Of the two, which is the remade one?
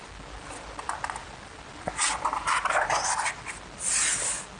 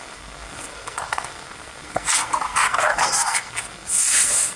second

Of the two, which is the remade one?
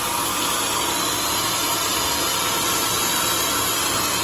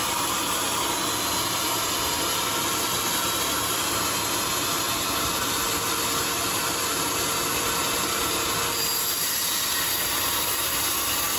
second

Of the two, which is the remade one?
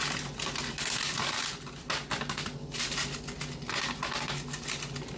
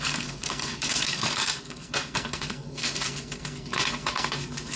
second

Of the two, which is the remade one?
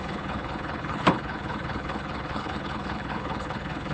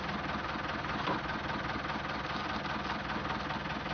first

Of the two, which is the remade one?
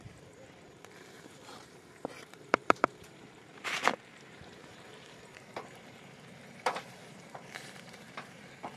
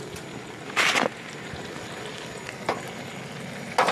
first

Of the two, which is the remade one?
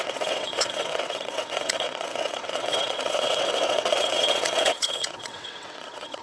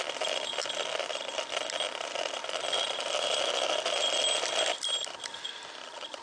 first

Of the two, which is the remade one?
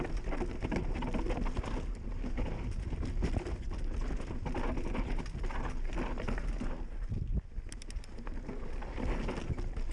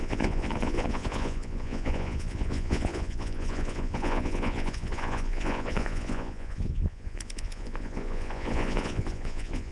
second